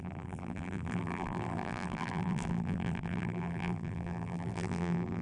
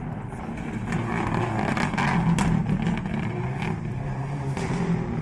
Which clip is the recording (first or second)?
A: second